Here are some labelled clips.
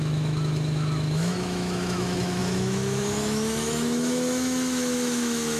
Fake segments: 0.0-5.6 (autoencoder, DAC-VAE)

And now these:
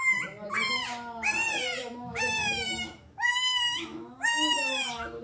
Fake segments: 1.8-5.2 (autoencoder, DAC-VAE)